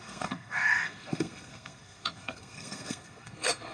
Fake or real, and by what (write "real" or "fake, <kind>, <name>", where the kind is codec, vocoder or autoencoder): fake, codec, SNAC